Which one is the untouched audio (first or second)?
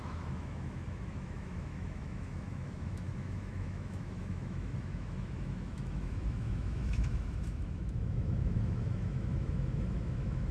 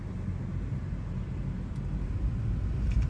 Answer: second